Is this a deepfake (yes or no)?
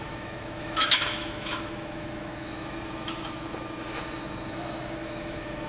yes